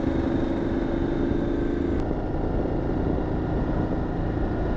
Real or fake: real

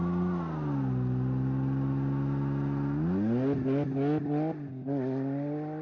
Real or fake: real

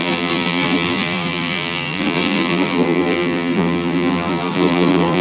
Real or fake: fake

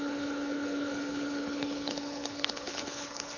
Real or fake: fake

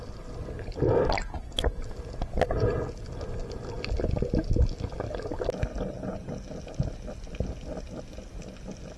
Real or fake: real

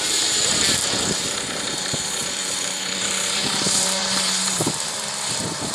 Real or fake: fake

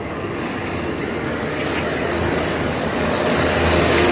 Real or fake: fake